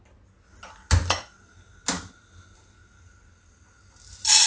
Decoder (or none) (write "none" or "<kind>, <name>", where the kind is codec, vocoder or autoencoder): none